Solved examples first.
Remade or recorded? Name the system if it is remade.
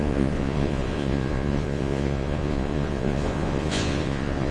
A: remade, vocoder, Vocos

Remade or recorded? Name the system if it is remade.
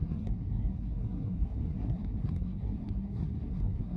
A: remade, codec, SNAC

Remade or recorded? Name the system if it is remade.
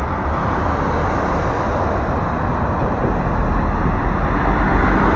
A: recorded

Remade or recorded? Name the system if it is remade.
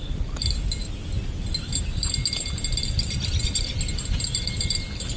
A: recorded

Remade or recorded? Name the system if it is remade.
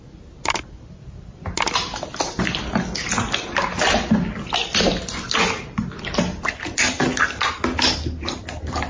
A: recorded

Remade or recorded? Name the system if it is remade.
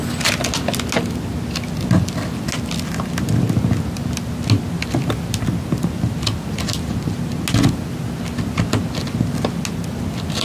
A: recorded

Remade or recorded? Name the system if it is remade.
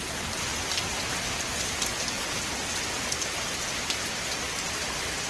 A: recorded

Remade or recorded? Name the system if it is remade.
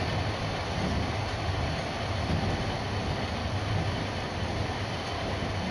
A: recorded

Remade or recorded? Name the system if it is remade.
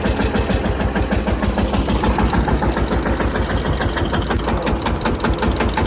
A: recorded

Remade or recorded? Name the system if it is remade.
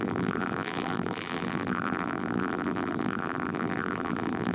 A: remade, vocoder, BigVGAN v2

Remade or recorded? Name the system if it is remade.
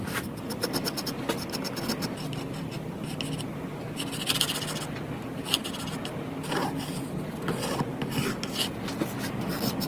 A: recorded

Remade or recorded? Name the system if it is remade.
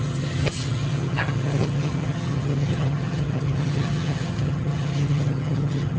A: remade, vocoder, HiFi-GAN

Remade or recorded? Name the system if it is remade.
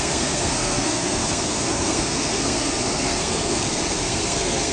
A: remade, codec, SNAC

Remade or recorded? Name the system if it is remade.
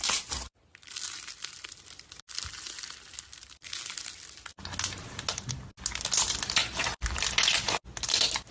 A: recorded